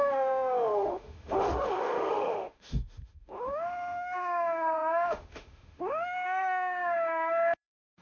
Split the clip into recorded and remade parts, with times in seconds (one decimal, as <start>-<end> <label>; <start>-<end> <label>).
0.0-8.0 remade